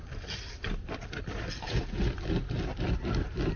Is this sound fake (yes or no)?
no